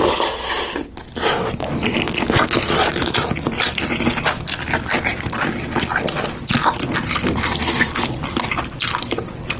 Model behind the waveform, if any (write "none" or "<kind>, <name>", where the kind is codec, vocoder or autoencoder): none